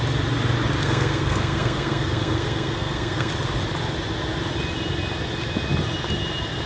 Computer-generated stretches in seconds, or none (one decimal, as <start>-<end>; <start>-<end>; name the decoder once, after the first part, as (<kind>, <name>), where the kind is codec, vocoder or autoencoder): 0.8-3.3 (codec, SNAC)